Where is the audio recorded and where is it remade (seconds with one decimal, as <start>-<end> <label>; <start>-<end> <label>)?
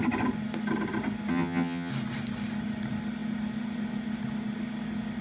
0.0-1.3 recorded; 1.3-1.9 remade; 1.9-5.2 recorded